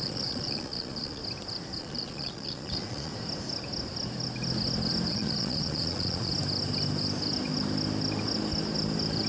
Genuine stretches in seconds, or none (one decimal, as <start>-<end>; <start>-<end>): 1.2-1.8; 3.1-5.1; 6.3-9.3